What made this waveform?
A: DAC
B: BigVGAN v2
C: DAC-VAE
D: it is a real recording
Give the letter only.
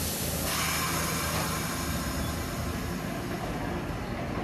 D